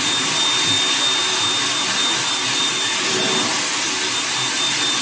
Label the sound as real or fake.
real